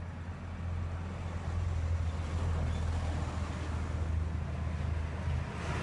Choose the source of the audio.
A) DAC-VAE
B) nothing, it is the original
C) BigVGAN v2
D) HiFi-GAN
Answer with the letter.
B